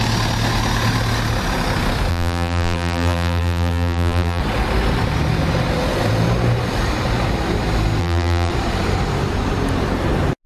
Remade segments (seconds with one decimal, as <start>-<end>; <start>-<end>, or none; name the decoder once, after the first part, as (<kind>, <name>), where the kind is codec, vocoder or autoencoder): 2.1-4.4 (vocoder, BigVGAN v2); 8.0-8.5